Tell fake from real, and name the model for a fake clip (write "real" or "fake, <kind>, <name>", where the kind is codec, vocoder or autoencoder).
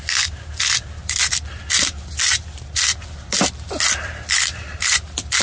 real